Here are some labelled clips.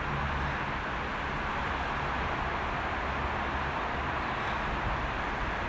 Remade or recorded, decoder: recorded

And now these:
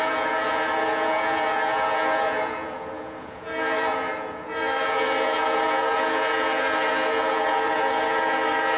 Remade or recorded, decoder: remade, vocoder, Vocos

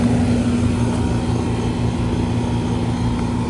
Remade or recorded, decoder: recorded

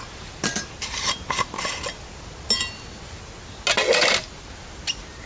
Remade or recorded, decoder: recorded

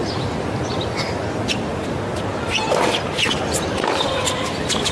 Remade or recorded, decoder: recorded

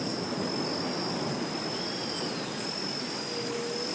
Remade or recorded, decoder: recorded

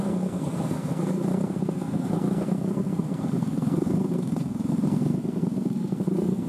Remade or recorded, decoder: remade, codec, SNAC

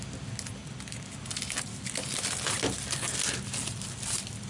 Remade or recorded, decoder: recorded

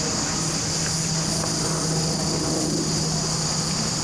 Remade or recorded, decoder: recorded